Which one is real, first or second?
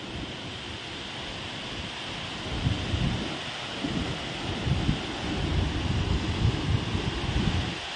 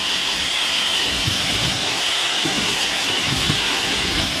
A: first